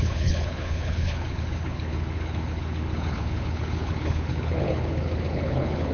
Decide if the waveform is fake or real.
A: fake